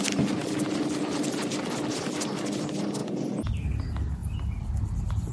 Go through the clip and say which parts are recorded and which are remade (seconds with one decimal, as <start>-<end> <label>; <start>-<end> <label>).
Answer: 0.0-3.0 recorded; 3.0-3.5 remade; 3.5-5.3 recorded

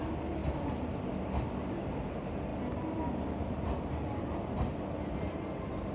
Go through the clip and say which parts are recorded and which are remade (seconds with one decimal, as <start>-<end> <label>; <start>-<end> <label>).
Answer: 0.0-0.4 recorded; 0.4-0.9 remade; 0.9-5.9 recorded

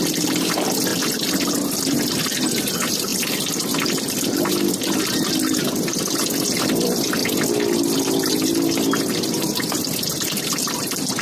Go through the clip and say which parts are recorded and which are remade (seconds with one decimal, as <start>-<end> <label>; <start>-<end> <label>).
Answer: 0.0-0.9 remade; 0.9-2.6 recorded; 2.6-7.2 remade; 7.2-8.3 recorded; 8.3-11.2 remade

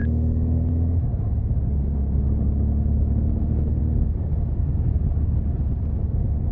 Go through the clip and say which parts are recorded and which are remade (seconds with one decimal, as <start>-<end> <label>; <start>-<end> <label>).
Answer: 0.0-6.5 recorded